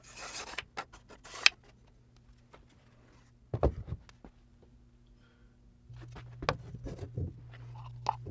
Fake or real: real